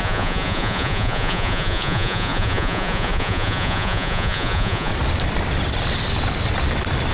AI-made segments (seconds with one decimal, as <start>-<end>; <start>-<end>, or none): 0.0-4.9